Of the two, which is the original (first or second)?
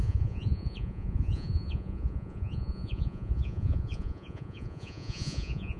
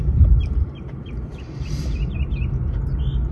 second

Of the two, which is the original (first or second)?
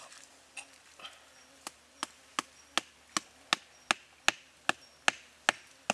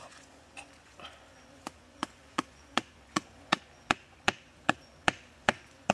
first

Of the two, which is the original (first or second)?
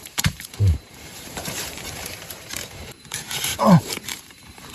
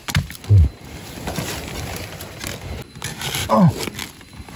second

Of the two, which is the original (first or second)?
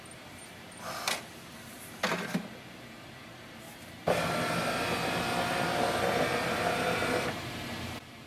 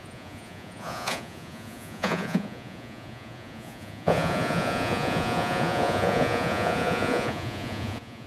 first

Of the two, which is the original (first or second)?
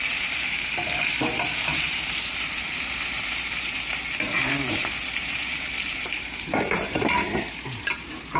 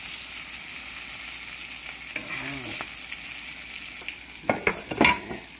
second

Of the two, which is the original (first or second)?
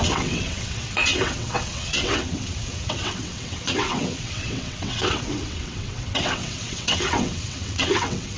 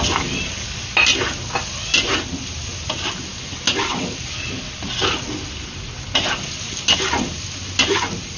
second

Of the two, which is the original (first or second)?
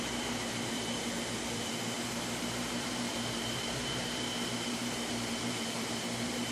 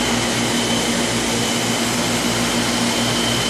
second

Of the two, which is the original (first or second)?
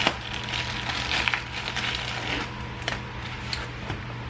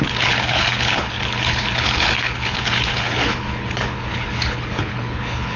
first